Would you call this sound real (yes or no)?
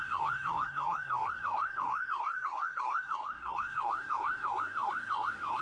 no